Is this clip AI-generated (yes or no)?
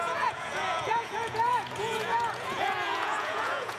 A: yes